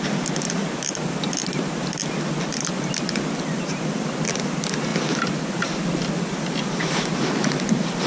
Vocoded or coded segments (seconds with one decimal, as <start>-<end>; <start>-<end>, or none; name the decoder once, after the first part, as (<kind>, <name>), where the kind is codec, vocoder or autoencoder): 4.9-8.1 (vocoder, BigVGAN v2)